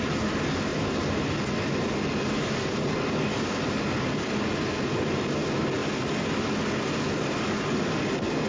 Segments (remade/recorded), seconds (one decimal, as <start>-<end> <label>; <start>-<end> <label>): 0.0-8.5 recorded